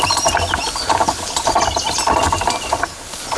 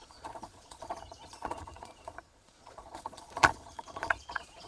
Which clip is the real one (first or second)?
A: first